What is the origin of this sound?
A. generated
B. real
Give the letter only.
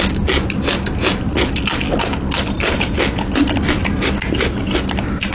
B